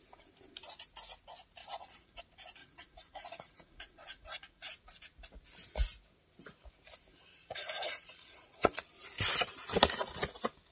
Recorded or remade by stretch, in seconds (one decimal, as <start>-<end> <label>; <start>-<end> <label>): 0.0-1.6 recorded; 1.6-2.2 remade; 2.2-2.6 recorded; 2.6-4.7 remade; 4.7-7.1 recorded; 7.1-8.8 remade; 8.8-10.7 recorded